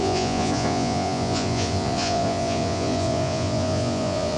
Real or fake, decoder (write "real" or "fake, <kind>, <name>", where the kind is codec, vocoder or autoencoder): fake, vocoder, Vocos